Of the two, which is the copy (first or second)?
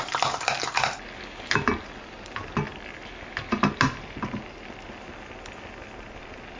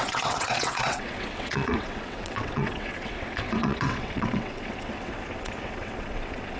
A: second